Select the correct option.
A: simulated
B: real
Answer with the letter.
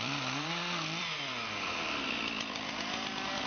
A